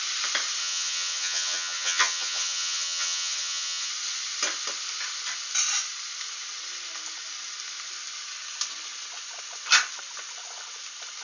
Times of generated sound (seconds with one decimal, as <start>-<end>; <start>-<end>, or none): 0.6-3.9